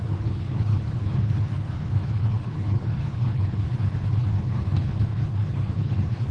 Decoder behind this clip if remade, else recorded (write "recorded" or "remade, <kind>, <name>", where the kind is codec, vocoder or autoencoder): remade, codec, HILCodec